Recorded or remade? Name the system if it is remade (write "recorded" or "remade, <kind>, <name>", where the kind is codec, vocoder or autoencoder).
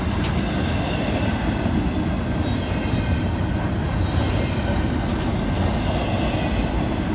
recorded